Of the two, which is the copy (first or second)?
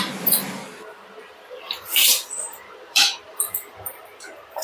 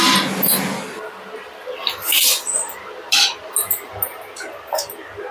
first